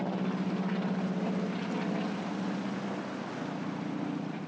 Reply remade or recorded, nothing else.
recorded